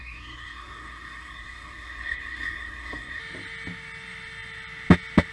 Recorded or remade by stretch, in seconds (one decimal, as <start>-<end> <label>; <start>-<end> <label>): 0.0-3.2 remade; 3.2-5.3 recorded